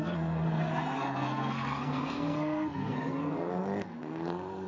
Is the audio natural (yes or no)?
no